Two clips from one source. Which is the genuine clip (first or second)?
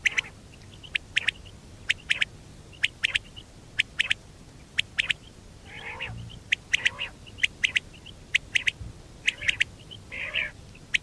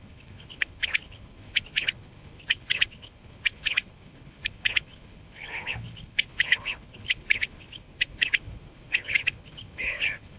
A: first